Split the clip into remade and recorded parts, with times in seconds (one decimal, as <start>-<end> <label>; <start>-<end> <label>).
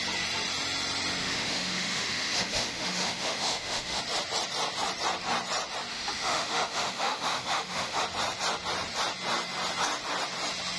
0.0-1.2 recorded; 1.2-4.0 remade; 4.0-5.9 recorded; 5.9-8.0 remade; 8.0-10.8 recorded